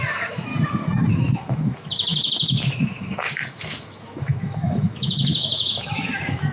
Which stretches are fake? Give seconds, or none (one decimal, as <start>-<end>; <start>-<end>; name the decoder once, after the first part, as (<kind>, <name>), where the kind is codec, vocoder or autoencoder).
0.0-0.5 (autoencoder, DAC-VAE); 1.1-6.5